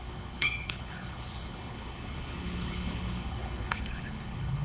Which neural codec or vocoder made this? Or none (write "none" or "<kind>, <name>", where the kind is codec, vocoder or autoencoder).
codec, HILCodec